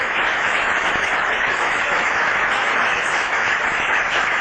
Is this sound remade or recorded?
remade